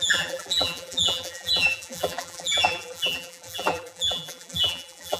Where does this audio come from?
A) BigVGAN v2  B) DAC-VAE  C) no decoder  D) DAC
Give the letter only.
A